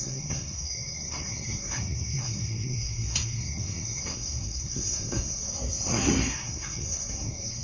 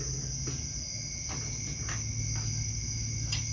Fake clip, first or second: first